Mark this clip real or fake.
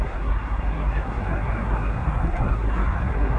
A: fake